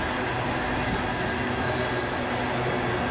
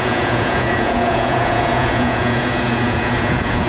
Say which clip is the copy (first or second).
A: second